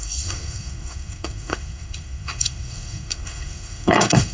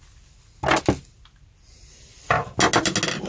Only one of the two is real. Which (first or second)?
second